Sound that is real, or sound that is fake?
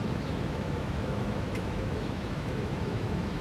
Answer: fake